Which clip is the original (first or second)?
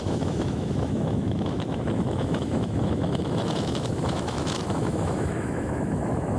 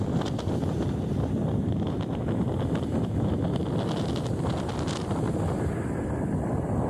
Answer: second